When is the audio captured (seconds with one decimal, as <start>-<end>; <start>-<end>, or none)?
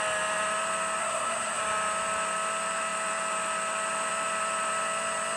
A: 0.0-1.0; 1.6-5.4